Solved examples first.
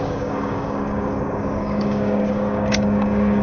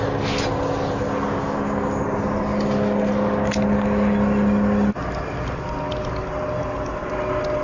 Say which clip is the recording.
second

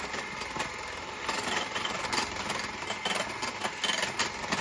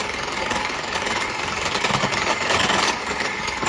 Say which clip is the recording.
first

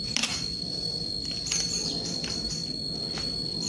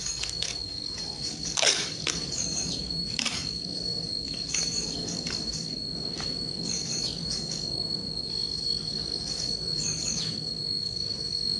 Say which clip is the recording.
first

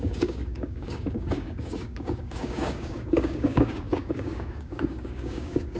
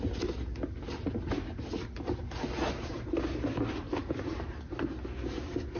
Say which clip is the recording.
second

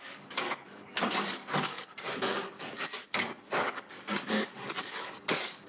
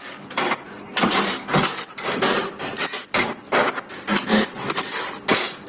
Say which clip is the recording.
second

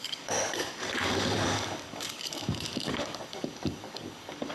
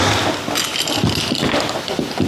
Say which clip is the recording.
second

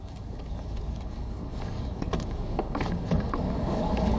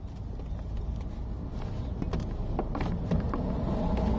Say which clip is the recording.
second